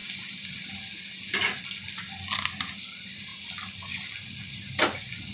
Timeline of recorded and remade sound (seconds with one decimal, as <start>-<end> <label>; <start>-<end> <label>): 0.0-5.3 recorded